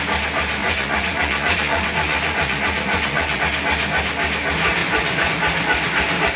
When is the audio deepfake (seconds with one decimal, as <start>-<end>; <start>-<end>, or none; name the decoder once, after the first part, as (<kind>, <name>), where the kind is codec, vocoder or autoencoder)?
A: 0.6-3.4 (vocoder, Vocos); 4.8-5.3